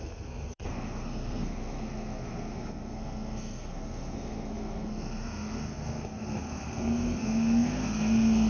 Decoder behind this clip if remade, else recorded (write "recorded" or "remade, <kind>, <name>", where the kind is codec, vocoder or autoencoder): remade, codec, SNAC